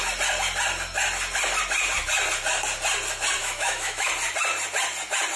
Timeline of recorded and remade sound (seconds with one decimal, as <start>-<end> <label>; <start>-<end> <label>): 0.0-3.4 recorded; 3.4-4.1 remade; 4.1-5.4 recorded